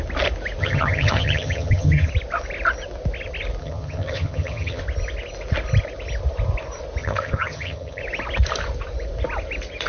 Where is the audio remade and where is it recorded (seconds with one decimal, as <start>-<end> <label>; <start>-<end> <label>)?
0.0-0.6 recorded; 0.6-2.1 remade; 2.1-3.6 recorded; 3.6-4.8 remade; 4.8-7.0 recorded; 7.0-8.0 remade; 8.0-9.9 recorded